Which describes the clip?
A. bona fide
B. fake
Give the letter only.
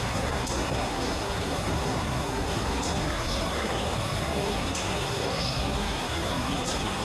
B